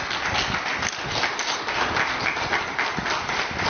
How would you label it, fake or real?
real